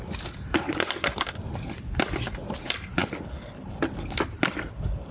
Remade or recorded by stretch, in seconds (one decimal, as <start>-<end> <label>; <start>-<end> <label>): 0.0-5.1 recorded